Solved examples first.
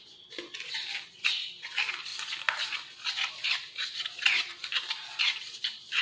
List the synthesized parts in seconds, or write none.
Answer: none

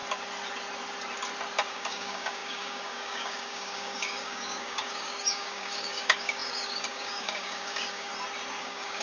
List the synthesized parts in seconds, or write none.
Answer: 1.7-8.1 (codec, DAC); 8.6-9.0

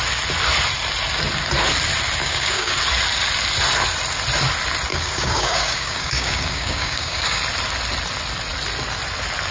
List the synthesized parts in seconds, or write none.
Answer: 2.2-2.8 (codec, DAC); 4.9-7.4

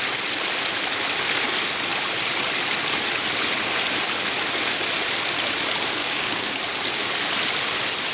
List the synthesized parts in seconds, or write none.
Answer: 6.0-6.6 (codec, DAC)

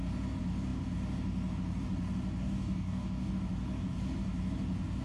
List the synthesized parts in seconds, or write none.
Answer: 2.4-3.3 (codec, DAC)

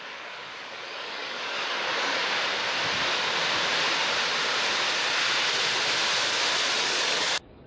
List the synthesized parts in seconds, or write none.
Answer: 0.0-2.2 (codec, DAC); 6.8-7.7